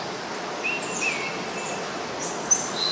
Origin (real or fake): real